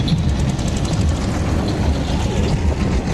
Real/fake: real